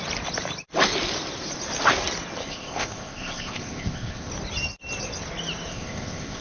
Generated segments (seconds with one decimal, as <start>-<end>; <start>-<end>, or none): 2.4-4.3; 5.7-6.4